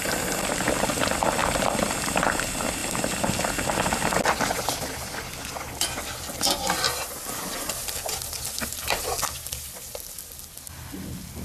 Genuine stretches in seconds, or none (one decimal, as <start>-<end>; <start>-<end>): 0.0-11.4